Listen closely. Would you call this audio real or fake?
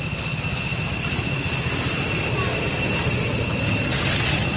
real